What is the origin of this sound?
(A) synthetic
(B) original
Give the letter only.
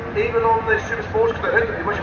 B